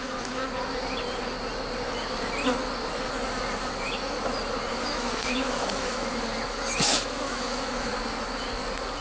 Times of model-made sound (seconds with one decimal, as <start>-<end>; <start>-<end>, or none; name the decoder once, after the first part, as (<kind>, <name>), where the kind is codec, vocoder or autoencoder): 0.0-0.4 (autoencoder, DAC-VAE); 4.7-6.1; 6.8-7.9

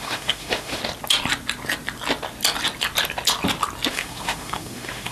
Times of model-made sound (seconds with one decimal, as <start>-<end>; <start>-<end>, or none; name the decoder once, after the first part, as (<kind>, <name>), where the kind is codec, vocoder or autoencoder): 0.0-0.8 (autoencoder, DAC-VAE); 3.9-5.1

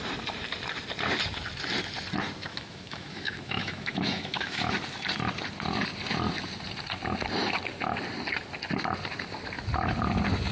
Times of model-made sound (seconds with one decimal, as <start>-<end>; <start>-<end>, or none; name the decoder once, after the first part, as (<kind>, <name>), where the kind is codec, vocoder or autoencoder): 2.5-4.7 (autoencoder, DAC-VAE)

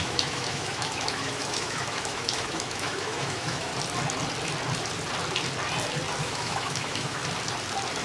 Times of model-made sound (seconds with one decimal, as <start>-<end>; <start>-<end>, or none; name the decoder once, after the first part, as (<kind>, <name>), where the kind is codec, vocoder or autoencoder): 0.0-3.7 (autoencoder, DAC-VAE); 6.2-7.2

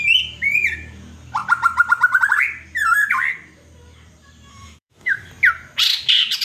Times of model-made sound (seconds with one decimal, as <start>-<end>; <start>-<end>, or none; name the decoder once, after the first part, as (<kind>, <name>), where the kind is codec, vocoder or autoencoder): 4.5-5.3 (autoencoder, DAC-VAE)

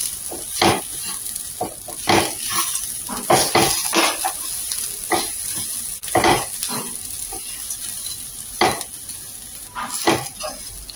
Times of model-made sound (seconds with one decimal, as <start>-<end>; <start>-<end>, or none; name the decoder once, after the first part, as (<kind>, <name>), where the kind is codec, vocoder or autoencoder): none

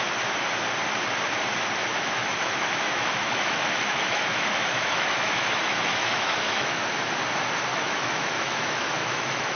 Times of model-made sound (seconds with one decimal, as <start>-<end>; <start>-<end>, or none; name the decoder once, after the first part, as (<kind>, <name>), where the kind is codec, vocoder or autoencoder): 1.9-6.8 (autoencoder, DAC-VAE); 7.7-9.6